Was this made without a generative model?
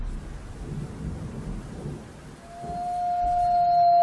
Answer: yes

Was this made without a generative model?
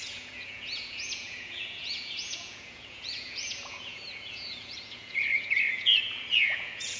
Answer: no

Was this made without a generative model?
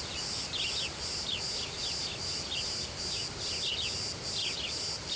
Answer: yes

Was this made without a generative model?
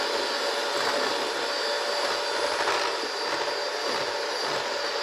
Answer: yes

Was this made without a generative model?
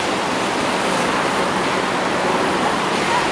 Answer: yes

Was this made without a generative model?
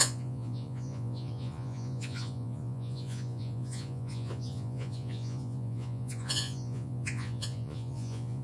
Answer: no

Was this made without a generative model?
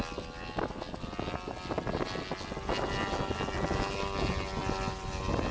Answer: yes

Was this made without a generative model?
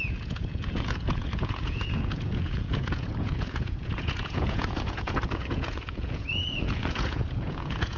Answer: no